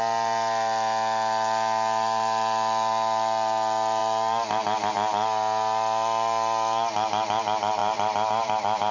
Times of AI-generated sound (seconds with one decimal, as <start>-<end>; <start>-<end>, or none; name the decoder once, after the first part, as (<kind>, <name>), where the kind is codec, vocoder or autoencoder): 7.8-8.9 (vocoder, BigVGAN v2)